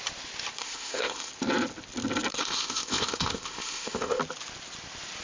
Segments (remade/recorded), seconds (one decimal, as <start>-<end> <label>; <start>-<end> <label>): 0.0-0.6 recorded; 0.6-1.3 remade; 1.3-2.4 recorded; 2.4-4.2 remade; 4.2-5.2 recorded